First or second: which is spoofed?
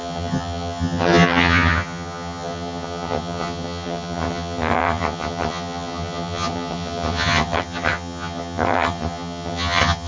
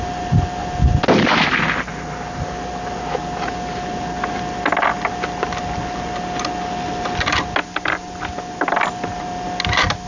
first